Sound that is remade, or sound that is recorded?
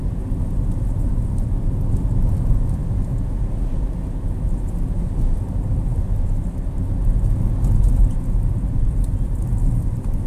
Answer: recorded